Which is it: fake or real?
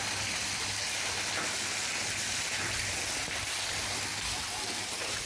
real